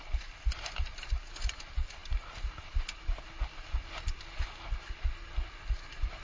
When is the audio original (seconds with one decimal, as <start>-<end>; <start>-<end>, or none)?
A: 0.0-6.2